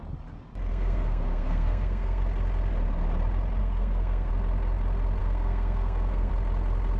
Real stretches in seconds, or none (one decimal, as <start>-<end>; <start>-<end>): 0.0-0.7; 2.2-3.6; 4.3-5.2; 6.3-7.0